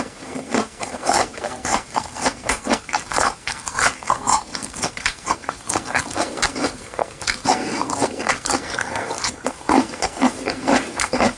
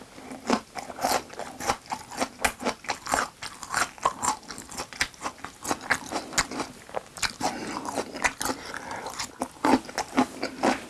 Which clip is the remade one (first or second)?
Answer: first